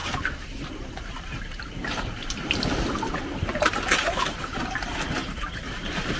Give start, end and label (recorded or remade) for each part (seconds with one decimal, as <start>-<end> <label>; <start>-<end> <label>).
0.0-6.2 remade